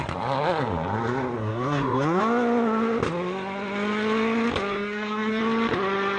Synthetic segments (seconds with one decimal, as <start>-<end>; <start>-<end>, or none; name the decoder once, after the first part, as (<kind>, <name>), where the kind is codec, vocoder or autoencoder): 1.4-2.2 (codec, SNAC); 4.7-5.4